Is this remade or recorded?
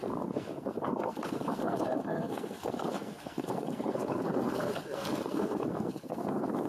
remade